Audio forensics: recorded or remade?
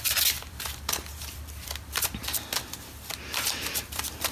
remade